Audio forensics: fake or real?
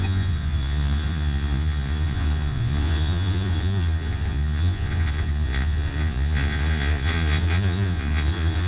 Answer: fake